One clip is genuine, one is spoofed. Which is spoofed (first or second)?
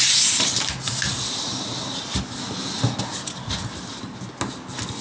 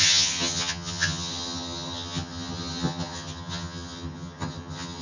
second